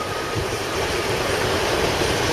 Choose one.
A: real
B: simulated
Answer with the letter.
B